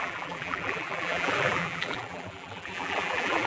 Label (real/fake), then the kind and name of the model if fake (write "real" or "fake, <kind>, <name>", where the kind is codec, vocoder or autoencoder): fake, vocoder, BigVGAN v2